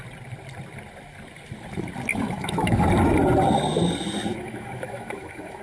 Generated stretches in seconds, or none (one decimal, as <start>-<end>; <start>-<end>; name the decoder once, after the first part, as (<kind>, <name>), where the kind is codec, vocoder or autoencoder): 2.1-2.8 (autoencoder, DAC-VAE); 4.3-5.6